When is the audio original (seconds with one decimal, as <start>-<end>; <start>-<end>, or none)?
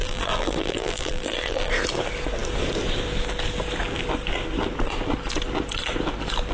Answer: 1.7-6.5